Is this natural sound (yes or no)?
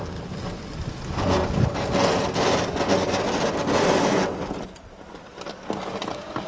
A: yes